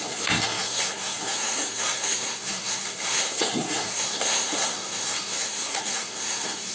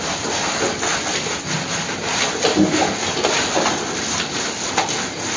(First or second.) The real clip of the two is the second